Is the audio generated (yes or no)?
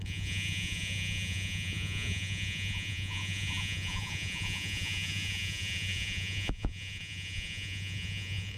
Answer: yes